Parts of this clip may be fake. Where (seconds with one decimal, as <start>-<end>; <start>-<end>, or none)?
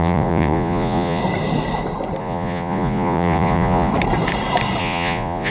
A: 0.0-1.2; 2.2-3.9; 4.8-5.5